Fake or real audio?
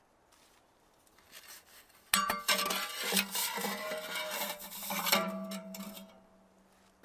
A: real